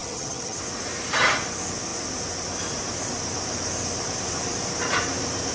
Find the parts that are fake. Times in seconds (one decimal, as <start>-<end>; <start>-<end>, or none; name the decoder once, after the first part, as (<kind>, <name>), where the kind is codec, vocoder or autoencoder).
0.0-0.6 (vocoder, HiFi-GAN)